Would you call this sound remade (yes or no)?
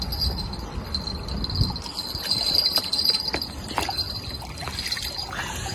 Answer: no